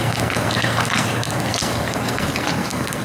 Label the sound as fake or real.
fake